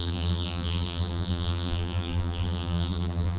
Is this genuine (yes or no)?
no